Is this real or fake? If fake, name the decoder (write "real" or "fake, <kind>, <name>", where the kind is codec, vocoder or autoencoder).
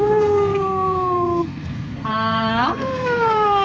fake, codec, SNAC